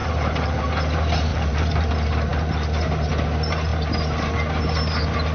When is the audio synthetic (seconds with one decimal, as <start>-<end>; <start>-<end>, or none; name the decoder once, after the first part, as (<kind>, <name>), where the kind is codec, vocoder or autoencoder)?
0.0-0.6 (vocoder, BigVGAN v2); 1.3-1.9